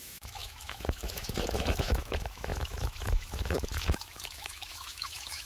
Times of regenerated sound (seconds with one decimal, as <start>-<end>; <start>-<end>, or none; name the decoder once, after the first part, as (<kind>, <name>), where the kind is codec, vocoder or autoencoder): 0.0-5.5 (autoencoder, DAC-VAE)